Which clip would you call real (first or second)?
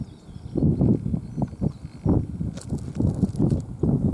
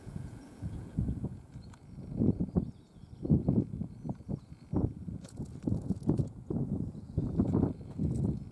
first